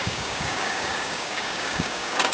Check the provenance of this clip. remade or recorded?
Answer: remade